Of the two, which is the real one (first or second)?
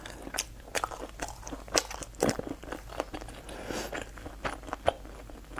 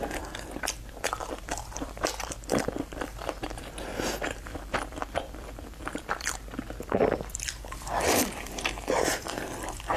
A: first